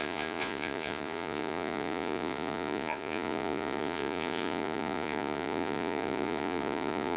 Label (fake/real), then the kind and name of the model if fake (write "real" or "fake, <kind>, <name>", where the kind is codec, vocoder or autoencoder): fake, vocoder, Vocos